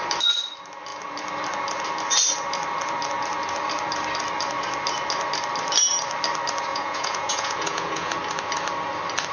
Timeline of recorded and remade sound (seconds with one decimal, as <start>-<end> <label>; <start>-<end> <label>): 0.0-6.7 recorded; 6.7-8.2 remade; 8.2-9.3 recorded